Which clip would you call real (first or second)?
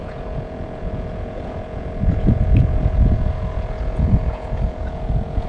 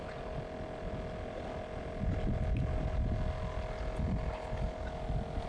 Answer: second